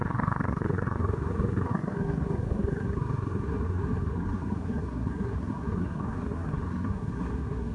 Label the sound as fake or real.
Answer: fake